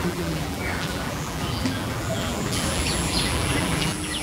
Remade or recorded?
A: remade